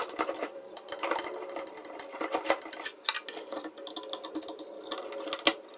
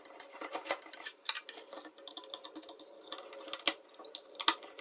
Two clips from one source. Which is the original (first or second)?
first